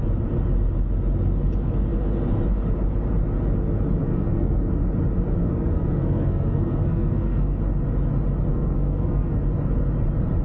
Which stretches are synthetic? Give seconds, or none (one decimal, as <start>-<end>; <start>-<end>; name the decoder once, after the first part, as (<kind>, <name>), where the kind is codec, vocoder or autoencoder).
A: 4.0-4.7 (codec, SNAC); 5.4-7.6; 8.5-9.4